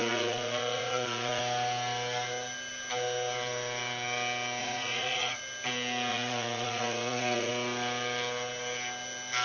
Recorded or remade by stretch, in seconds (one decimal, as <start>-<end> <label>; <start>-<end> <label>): 0.0-1.4 remade; 1.4-4.6 recorded; 4.6-5.4 remade; 5.4-6.1 recorded; 6.1-7.5 remade; 7.5-9.4 recorded